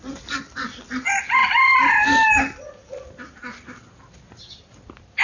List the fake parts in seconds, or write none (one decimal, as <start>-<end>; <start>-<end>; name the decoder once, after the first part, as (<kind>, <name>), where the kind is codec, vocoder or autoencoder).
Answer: none